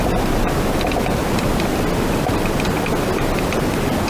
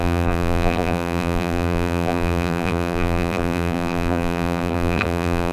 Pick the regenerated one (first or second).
second